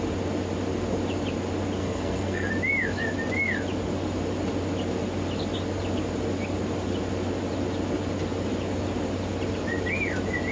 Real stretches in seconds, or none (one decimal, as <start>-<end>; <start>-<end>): 0.0-1.8; 2.5-10.5